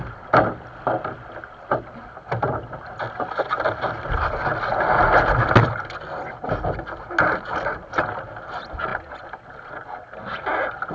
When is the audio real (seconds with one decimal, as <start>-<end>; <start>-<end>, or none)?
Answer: 0.0-10.9